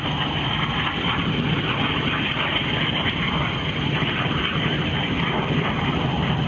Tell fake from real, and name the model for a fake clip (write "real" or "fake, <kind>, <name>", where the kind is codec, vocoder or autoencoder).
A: fake, vocoder, BigVGAN v2